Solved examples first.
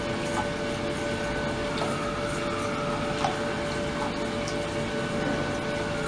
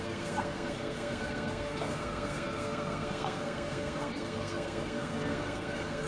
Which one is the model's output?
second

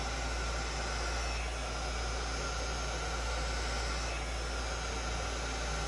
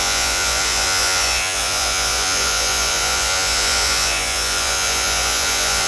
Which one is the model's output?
second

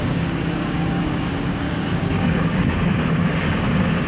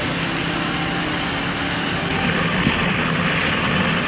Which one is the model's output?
first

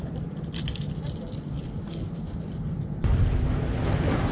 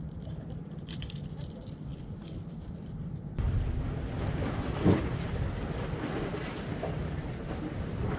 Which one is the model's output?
second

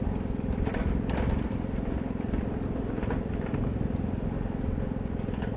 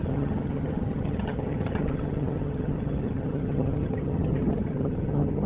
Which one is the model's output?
second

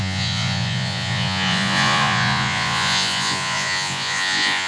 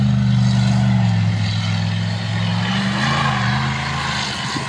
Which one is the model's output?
first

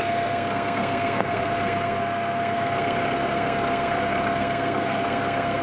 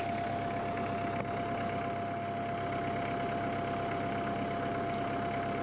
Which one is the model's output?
first